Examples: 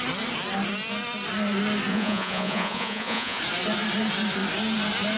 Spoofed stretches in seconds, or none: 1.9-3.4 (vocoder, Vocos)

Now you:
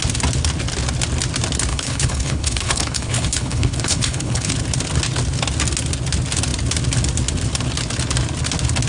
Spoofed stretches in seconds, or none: 1.7-4.5 (codec, HILCodec)

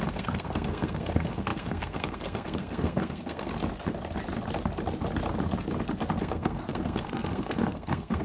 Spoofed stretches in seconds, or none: 0.0-3.5 (codec, SNAC); 6.2-8.2

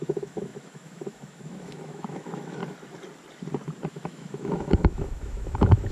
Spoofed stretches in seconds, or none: 0.0-2.6 (autoencoder, DAC-VAE); 3.9-5.9

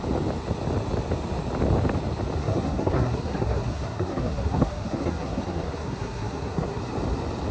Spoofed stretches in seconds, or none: 2.4-6.8 (codec, SNAC)

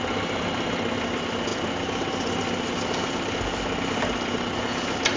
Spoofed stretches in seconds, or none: none